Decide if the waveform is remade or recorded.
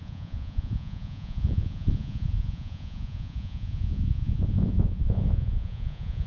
remade